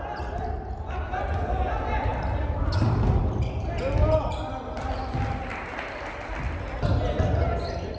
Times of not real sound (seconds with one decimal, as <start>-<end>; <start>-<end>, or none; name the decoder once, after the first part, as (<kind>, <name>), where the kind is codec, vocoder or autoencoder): none

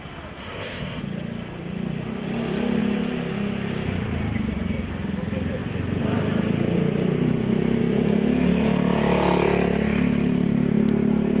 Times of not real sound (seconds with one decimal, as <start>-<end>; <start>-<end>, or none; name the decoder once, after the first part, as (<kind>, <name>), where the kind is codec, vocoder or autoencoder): 0.4-1.0 (codec, ZipCodec)

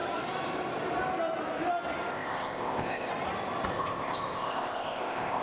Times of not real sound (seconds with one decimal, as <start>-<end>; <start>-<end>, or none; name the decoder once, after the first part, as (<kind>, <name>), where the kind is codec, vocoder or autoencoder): 2.1-3.1 (codec, ZipCodec); 3.7-5.4

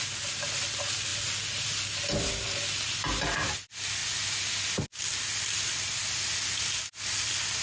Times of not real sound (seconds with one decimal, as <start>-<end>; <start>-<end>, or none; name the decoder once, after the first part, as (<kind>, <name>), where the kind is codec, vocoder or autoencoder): none

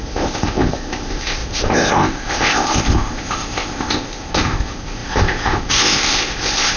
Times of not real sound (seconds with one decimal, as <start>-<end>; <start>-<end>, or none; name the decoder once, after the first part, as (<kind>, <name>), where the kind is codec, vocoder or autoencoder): 0.0-6.8 (codec, ZipCodec)

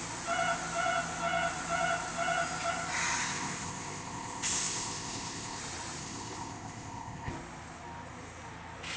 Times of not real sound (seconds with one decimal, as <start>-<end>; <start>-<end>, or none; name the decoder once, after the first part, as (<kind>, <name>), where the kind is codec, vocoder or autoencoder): 3.2-5.6 (codec, ZipCodec); 6.0-7.3

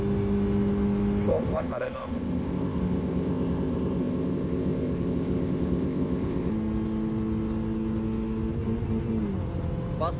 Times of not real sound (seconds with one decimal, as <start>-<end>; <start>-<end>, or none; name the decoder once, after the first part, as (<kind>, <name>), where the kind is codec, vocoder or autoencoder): 1.3-6.5 (codec, ZipCodec)